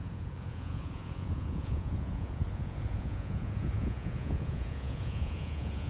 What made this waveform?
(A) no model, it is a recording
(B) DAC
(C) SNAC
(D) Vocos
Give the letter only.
D